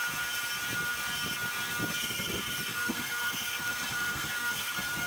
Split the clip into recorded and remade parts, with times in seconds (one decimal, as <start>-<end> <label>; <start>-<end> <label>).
0.0-1.9 recorded; 1.9-5.1 remade